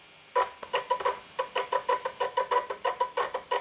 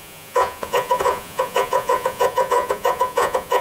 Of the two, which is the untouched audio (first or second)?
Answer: first